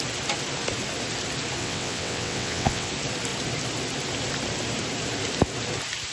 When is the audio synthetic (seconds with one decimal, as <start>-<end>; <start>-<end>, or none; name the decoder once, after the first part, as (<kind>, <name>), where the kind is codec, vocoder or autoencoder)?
1.6-2.9 (vocoder, WaveNeXt)